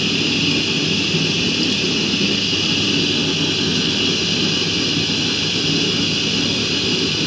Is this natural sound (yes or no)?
yes